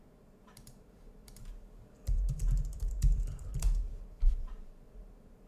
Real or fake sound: fake